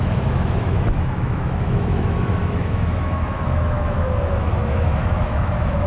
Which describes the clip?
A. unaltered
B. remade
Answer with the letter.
B